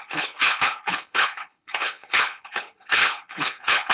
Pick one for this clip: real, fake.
fake